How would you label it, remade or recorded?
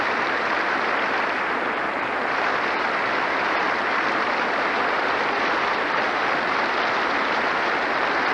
remade